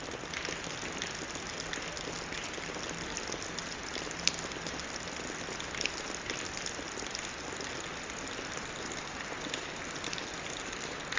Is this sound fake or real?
real